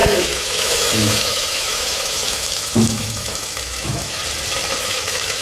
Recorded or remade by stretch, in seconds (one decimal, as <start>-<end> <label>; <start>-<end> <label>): 0.0-4.2 remade; 4.2-4.8 recorded; 4.8-5.4 remade